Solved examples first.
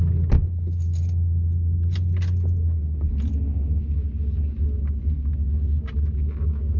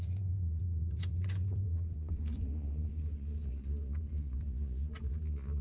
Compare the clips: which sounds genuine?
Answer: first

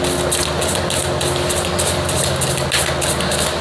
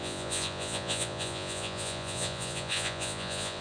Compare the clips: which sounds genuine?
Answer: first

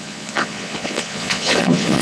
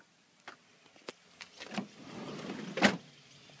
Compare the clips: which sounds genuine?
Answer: second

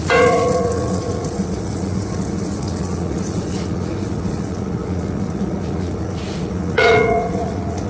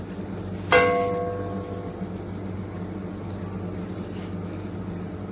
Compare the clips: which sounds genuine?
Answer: second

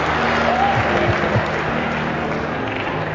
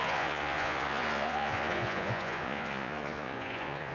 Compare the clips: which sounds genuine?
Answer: first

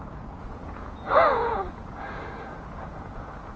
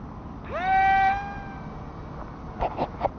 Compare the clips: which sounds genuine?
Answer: second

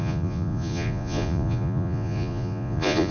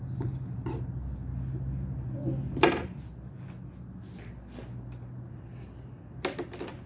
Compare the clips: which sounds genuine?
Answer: second